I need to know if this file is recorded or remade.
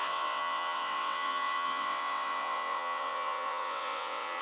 remade